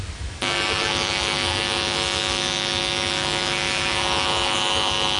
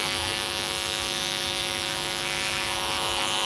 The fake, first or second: second